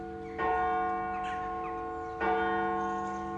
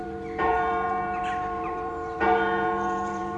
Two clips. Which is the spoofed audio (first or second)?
second